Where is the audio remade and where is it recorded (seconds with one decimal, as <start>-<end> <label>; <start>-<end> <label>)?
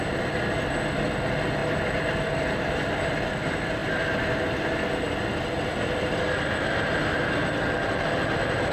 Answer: 0.0-8.7 recorded